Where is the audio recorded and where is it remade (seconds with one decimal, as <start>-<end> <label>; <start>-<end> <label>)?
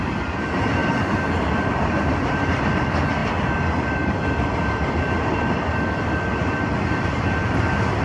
0.0-0.8 recorded; 0.8-2.6 remade; 2.6-8.0 recorded